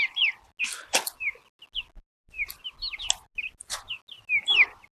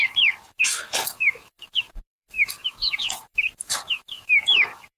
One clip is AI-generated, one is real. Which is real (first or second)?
first